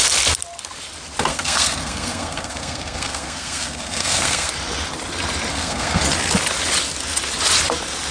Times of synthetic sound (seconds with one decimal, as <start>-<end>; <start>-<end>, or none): 1.3-4.5; 5.5-6.0